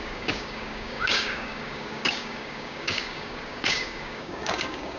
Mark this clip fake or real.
fake